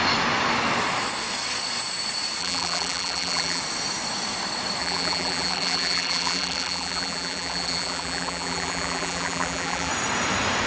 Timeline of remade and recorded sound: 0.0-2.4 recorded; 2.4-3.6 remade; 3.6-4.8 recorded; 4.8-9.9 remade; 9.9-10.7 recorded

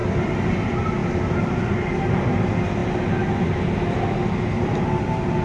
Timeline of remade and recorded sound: 0.0-0.5 remade; 0.5-1.0 recorded; 1.0-2.4 remade; 2.4-5.4 recorded

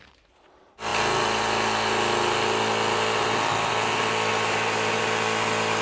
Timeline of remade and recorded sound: 0.0-4.3 recorded; 4.3-5.0 remade; 5.0-5.8 recorded

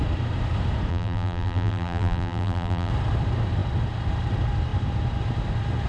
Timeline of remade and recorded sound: 0.0-0.9 recorded; 0.9-2.9 remade; 2.9-5.9 recorded

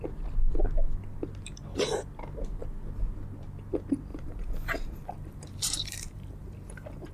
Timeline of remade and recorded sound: 0.0-4.1 recorded; 4.1-7.1 remade

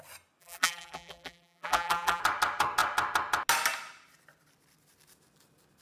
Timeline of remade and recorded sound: 0.0-0.4 recorded; 0.4-2.2 remade; 2.2-5.8 recorded